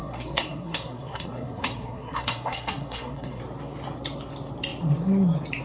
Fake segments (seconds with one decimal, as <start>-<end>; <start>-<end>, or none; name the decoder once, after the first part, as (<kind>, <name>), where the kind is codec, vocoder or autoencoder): 0.0-3.4 (codec, SNAC)